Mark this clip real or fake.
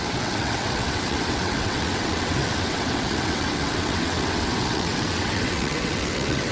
fake